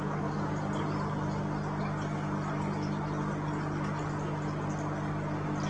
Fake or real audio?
real